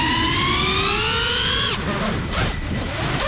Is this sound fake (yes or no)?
no